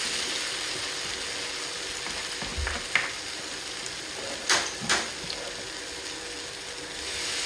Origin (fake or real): real